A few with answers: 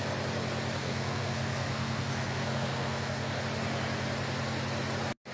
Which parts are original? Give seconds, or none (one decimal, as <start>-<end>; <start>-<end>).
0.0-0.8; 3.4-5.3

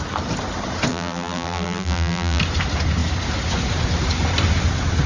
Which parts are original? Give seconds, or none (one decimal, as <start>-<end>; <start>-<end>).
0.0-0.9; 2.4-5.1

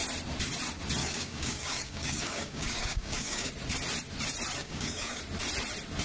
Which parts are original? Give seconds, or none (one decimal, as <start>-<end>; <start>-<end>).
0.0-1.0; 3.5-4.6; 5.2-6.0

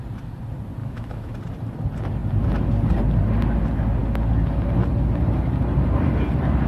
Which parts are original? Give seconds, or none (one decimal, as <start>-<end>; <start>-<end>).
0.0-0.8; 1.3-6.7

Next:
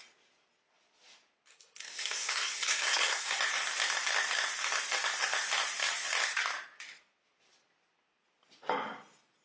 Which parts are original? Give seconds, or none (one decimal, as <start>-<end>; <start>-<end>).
0.0-1.5; 3.4-9.4

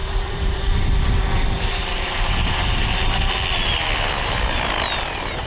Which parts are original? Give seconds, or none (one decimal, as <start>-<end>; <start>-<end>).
3.3-5.5

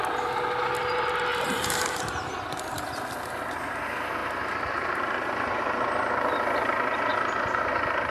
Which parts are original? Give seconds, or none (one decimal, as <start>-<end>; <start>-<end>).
0.0-1.3; 2.4-4.2; 5.0-7.1; 7.6-8.1

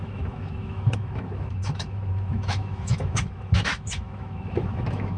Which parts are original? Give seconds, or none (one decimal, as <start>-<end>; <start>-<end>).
none